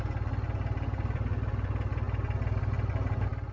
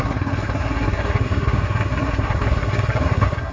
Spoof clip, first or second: second